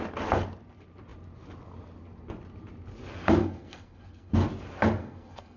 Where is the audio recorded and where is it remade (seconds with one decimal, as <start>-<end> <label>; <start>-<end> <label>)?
0.0-3.4 recorded; 3.4-4.3 remade; 4.3-5.0 recorded; 5.0-5.6 remade